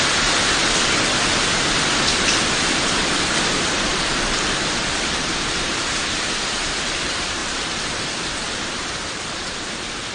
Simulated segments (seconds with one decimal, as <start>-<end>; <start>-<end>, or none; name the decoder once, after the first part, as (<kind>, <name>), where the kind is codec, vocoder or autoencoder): 0.0-0.6 (vocoder, BigVGAN v2); 1.9-10.1